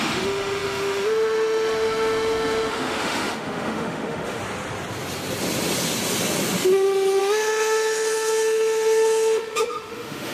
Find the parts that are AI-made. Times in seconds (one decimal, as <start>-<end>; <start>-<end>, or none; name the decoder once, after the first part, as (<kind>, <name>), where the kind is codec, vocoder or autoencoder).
0.0-4.4 (autoencoder, DAC-VAE); 7.2-10.3